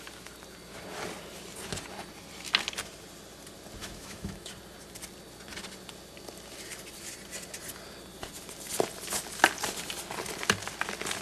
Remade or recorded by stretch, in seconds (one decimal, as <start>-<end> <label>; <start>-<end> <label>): 0.0-3.8 recorded; 3.8-4.5 remade; 4.5-11.2 recorded